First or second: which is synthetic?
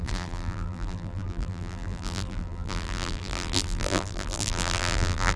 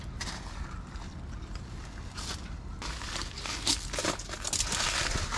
first